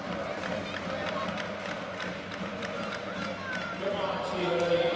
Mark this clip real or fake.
real